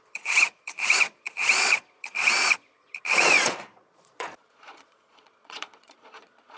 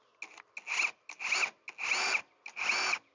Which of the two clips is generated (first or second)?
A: first